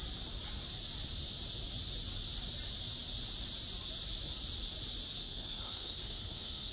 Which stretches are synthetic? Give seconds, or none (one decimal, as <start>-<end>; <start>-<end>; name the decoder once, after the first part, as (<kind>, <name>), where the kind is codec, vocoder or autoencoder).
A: 5.2-6.7 (codec, SNAC)